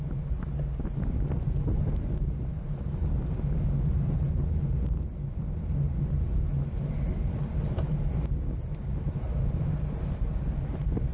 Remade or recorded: recorded